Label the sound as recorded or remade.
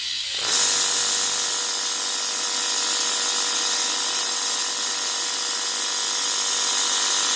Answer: recorded